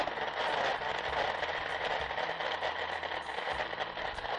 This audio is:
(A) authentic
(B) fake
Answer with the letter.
A